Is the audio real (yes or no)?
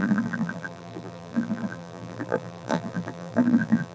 no